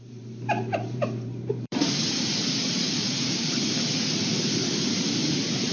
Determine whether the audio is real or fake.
fake